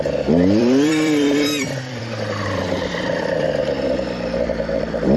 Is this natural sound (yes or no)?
no